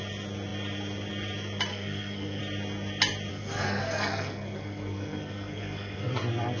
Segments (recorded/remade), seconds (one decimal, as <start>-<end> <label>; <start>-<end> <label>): 0.0-1.7 recorded; 1.7-2.4 remade; 2.4-3.3 recorded; 3.3-6.1 remade; 6.1-6.6 recorded